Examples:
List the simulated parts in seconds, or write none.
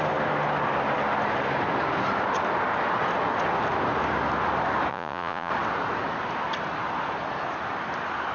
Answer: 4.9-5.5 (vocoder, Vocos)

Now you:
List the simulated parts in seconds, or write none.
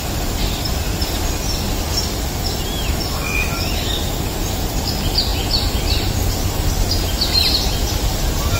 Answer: none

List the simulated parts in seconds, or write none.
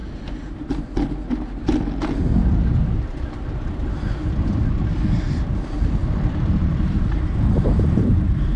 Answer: 5.2-8.6 (vocoder, BigVGAN v2)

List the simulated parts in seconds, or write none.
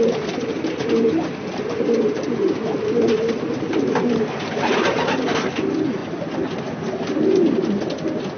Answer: none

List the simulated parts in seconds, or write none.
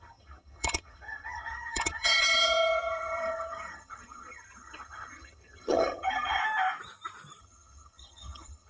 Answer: 0.0-6.4 (vocoder, HiFi-GAN); 7.4-8.7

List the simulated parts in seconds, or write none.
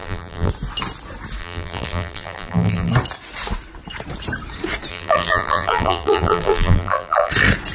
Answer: 0.0-0.5 (vocoder, BigVGAN v2); 1.4-2.9; 4.9-7.3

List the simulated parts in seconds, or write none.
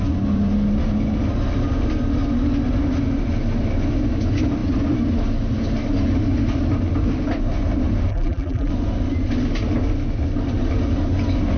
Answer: 8.1-8.7 (vocoder, BigVGAN v2)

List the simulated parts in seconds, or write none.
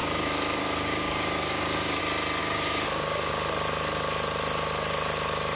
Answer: 0.0-2.0 (codec, DAC); 2.4-3.3